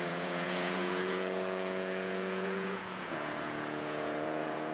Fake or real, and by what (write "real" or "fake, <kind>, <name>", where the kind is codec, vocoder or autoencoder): fake, vocoder, Vocos